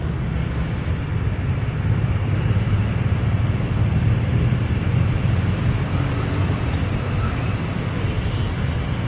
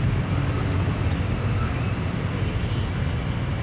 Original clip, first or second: second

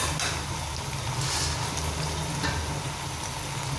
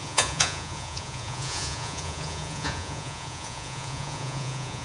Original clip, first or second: first